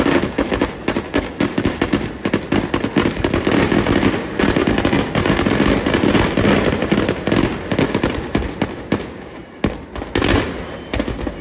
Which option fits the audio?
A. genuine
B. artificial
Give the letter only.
A